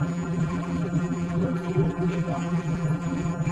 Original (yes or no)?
no